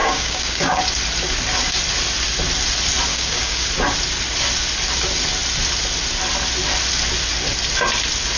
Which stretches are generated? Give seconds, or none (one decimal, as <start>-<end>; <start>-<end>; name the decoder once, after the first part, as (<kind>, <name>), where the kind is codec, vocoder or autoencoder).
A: 0.0-0.8 (codec, DAC); 3.1-3.7